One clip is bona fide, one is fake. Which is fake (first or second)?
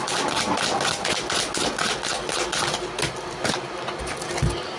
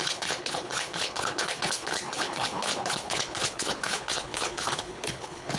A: second